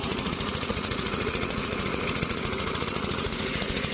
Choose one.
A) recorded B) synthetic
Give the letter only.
B